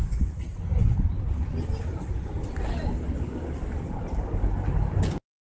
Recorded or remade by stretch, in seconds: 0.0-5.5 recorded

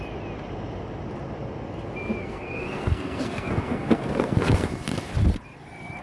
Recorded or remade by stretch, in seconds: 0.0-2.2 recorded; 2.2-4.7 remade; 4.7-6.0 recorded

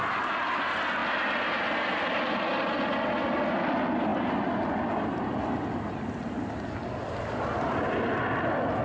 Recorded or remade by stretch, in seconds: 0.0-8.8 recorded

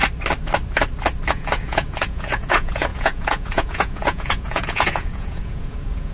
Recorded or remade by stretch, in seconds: 0.0-1.3 recorded; 1.3-6.1 remade

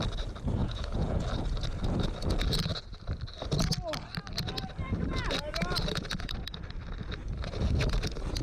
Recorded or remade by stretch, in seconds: 0.0-0.6 recorded; 0.6-1.2 remade; 1.2-8.4 recorded

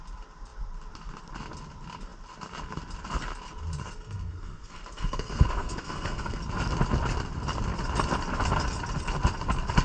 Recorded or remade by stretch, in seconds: 0.0-3.8 recorded; 3.8-6.4 remade; 6.4-9.8 recorded